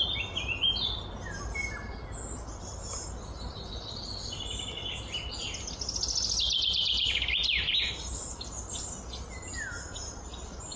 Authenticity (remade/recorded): recorded